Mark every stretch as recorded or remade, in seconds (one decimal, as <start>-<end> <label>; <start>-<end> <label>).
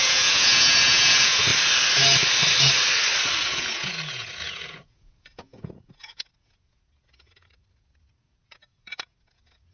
0.0-1.5 remade; 1.5-3.4 recorded; 3.4-9.7 remade